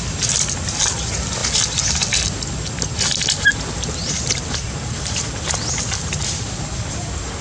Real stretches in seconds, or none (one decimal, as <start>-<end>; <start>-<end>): 0.0-4.6; 5.2-7.4